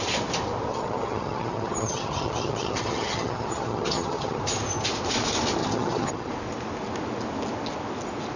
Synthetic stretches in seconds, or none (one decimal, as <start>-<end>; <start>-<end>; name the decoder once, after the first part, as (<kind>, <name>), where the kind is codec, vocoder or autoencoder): 0.7-4.4 (vocoder, HiFi-GAN); 5.6-6.3